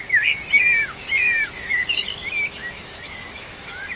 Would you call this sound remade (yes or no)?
yes